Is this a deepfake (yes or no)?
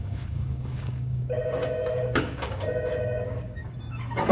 yes